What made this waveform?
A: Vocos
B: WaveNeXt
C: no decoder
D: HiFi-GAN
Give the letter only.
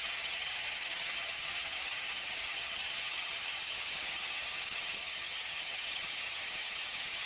D